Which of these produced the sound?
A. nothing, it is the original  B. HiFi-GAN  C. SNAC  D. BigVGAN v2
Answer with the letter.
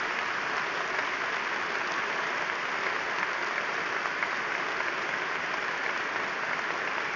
A